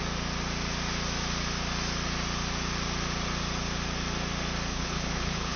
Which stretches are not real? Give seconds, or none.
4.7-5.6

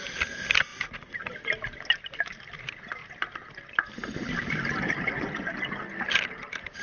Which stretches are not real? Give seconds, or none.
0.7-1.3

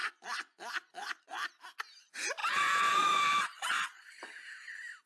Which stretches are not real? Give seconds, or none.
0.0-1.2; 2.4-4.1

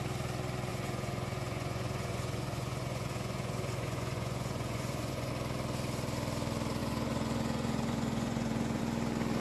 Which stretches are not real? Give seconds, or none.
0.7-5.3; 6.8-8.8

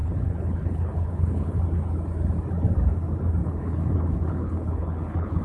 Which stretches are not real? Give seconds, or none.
0.0-1.6; 3.4-5.4

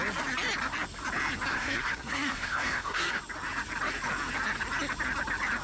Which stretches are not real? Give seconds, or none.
1.5-3.2

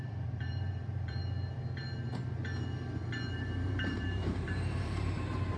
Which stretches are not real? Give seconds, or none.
0.0-1.2; 3.3-5.6

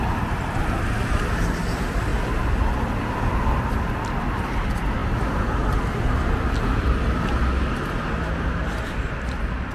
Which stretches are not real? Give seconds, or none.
none